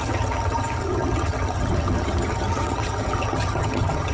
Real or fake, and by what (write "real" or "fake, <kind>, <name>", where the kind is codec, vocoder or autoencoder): fake, vocoder, HiFi-GAN